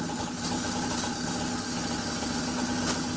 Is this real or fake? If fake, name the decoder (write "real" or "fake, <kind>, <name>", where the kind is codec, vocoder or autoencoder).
real